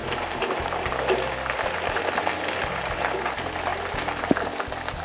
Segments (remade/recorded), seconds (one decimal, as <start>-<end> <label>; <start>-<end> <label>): 0.0-5.0 recorded